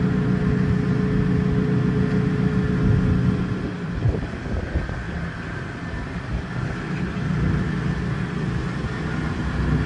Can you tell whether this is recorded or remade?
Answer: recorded